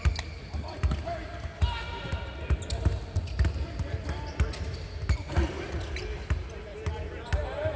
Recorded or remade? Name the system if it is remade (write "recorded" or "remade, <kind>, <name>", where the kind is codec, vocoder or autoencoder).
recorded